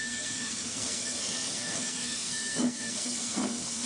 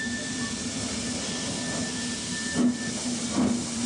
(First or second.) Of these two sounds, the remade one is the first